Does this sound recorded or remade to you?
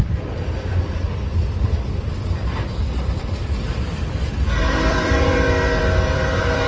remade